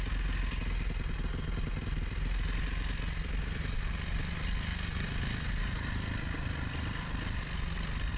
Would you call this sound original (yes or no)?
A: yes